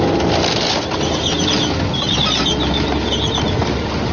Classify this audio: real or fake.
real